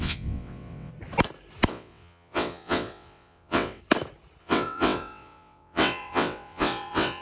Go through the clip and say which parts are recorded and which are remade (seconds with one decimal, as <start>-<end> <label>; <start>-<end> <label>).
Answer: 0.0-0.9 remade; 0.9-1.7 recorded; 1.7-3.8 remade; 3.8-4.4 recorded; 4.4-7.2 remade

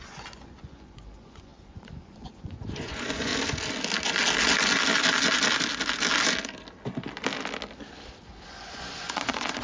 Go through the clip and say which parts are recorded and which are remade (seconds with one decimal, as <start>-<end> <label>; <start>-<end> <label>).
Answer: 0.0-3.3 remade; 3.3-8.4 recorded; 8.4-9.6 remade

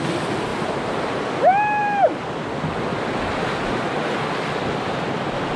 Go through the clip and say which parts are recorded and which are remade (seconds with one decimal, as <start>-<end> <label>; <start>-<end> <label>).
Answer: 0.0-0.5 recorded; 0.5-1.3 remade; 1.3-5.6 recorded

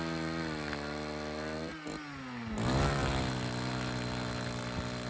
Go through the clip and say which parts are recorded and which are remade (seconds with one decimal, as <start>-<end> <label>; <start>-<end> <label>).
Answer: 0.0-5.1 recorded